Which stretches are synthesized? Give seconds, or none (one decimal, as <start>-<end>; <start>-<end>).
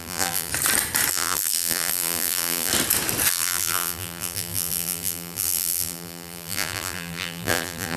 0.0-0.5; 1.1-2.7; 3.3-8.0